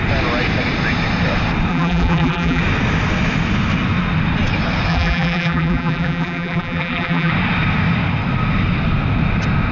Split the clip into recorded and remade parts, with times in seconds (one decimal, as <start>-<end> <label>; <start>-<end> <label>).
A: 0.0-1.7 recorded; 1.7-2.6 remade; 2.6-4.9 recorded; 4.9-7.3 remade; 7.3-9.7 recorded